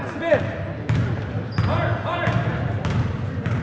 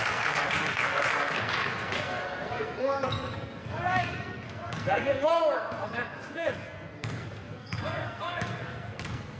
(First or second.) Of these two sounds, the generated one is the second